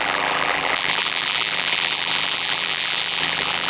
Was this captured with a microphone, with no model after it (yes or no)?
no